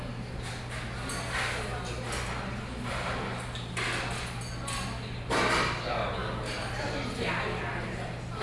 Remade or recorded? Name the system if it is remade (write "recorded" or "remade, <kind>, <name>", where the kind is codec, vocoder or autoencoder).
recorded